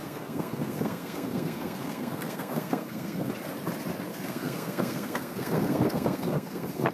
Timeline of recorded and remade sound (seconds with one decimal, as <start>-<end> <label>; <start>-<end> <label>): 0.0-3.3 remade; 3.3-4.1 recorded; 4.1-6.9 remade